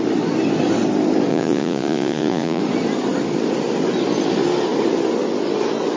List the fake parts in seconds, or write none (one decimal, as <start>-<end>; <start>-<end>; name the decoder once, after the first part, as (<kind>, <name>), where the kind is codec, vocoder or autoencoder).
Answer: 1.3-2.6 (vocoder, Vocos)